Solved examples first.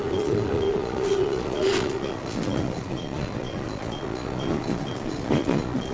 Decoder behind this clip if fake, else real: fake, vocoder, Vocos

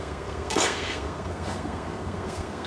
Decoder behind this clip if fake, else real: fake, codec, SNAC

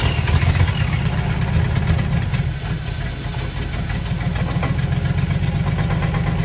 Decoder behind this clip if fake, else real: real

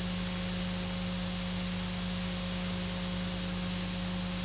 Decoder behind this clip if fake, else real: real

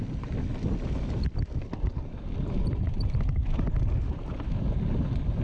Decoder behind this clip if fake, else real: real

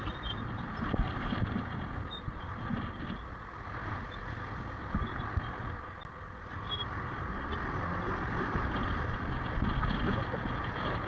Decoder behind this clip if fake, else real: real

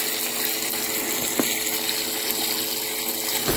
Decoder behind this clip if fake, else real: real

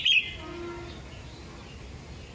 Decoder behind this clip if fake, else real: real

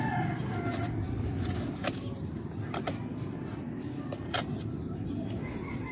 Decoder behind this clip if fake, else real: fake, vocoder, BigVGAN v2